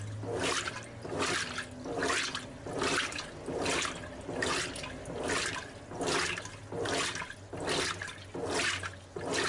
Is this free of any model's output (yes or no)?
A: yes